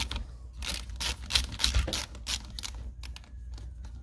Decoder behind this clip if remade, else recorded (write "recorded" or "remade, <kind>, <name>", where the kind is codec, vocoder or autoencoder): recorded